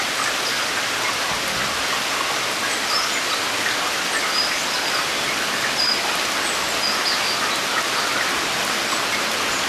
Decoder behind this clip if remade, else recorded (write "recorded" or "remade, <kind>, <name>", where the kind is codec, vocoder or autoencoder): recorded